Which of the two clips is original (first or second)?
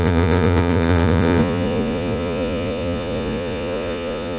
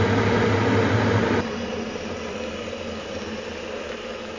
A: second